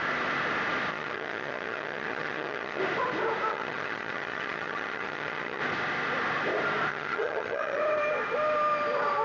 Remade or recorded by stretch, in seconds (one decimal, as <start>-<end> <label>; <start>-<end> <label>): 0.0-0.9 recorded; 0.9-2.8 remade; 2.8-3.5 recorded; 3.5-5.6 remade; 5.6-6.9 recorded; 6.9-7.8 remade; 7.8-9.2 recorded